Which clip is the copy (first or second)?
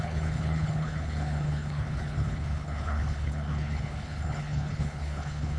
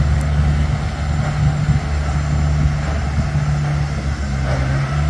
first